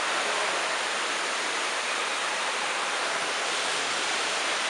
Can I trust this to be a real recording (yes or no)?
no